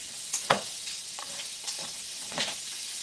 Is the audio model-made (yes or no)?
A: yes